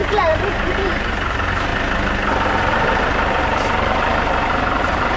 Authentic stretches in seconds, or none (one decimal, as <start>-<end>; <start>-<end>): 1.7-2.7